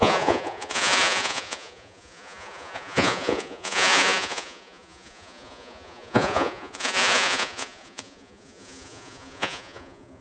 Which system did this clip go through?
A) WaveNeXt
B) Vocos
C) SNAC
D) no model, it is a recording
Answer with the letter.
B